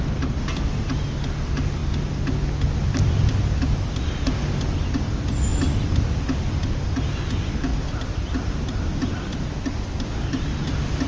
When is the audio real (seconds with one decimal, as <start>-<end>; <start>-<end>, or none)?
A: 0.0-11.1